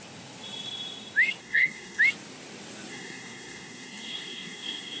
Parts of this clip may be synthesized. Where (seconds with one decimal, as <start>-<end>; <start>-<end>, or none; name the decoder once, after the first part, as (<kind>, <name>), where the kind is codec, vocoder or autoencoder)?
1.4-2.0 (codec, SNAC); 2.9-5.0